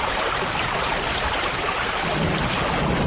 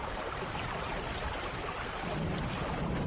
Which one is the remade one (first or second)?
second